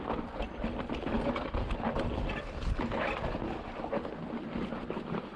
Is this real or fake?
real